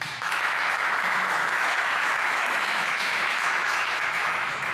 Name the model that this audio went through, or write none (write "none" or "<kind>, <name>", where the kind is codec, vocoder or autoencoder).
autoencoder, DAC-VAE